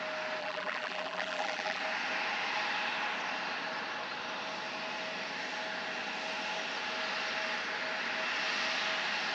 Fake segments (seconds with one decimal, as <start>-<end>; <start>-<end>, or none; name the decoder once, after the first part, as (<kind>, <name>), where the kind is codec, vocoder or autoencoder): 0.4-1.8 (vocoder, BigVGAN v2)